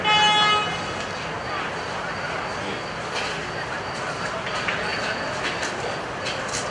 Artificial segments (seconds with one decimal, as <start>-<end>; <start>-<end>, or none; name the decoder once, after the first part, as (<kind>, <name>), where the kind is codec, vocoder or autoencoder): none